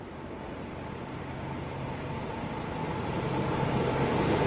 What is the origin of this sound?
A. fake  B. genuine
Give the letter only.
A